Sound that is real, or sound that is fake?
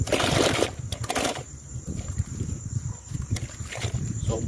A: fake